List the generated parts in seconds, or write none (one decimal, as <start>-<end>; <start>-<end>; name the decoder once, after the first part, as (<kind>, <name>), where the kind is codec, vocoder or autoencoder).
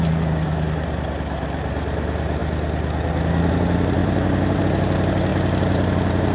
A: 0.0-2.4 (vocoder, BigVGAN v2); 3.5-6.3